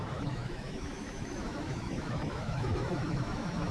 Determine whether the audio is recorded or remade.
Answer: remade